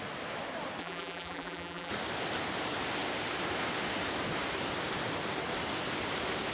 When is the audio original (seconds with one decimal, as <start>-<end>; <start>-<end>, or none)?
0.0-0.8; 1.9-6.5